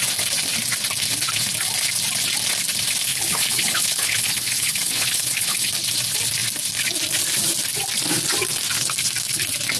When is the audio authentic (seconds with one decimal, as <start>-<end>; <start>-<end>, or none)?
0.0-3.1; 5.7-9.8